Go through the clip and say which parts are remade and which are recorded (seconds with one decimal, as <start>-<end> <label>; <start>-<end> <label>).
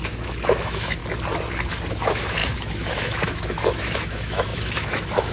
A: 0.0-1.0 remade; 1.0-1.9 recorded; 1.9-5.3 remade